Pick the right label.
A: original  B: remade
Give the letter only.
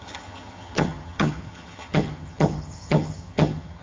B